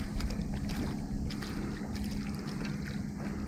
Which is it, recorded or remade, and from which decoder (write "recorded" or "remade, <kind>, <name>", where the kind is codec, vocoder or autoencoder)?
recorded